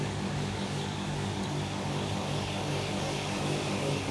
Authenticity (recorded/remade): remade